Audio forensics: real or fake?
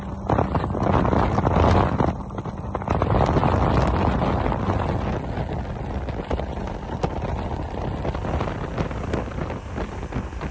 real